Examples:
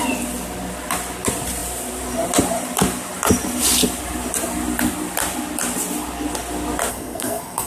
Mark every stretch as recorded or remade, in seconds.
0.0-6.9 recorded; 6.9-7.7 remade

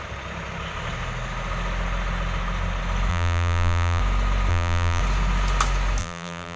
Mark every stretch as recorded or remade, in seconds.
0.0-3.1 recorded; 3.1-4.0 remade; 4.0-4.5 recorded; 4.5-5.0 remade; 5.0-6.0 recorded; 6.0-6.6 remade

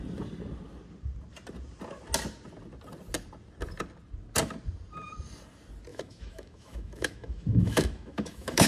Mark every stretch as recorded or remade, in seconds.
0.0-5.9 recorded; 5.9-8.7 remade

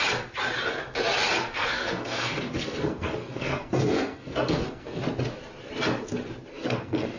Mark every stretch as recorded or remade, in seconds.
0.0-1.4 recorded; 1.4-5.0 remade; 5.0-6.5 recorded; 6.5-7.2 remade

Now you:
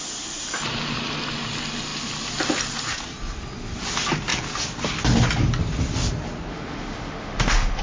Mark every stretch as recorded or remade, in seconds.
0.0-6.5 recorded; 6.5-7.8 remade

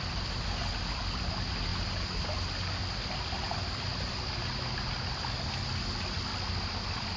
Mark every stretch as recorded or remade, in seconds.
0.0-7.2 recorded

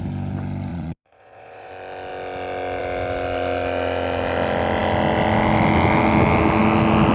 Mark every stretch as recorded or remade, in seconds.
0.0-0.7 recorded; 0.7-1.7 remade; 1.7-7.1 recorded

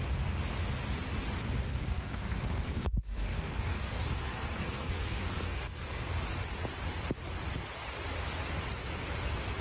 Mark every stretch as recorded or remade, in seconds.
0.0-1.7 recorded; 1.7-6.1 remade; 6.1-9.6 recorded